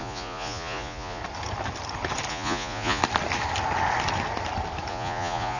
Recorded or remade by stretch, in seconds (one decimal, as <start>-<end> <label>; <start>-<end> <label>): 0.0-1.2 remade; 1.2-2.3 recorded; 2.3-3.0 remade; 3.0-4.9 recorded; 4.9-5.6 remade